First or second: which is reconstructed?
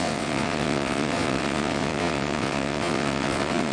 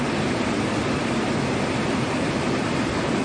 first